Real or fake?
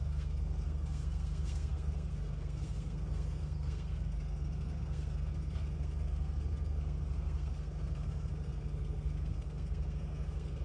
fake